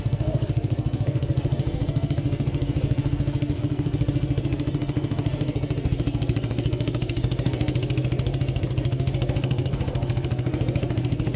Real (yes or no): no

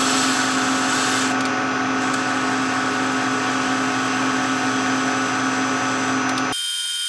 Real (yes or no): yes